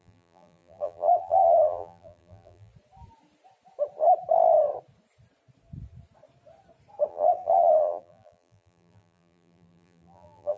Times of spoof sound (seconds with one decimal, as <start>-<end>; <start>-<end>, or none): 0.0-2.7; 7.1-10.6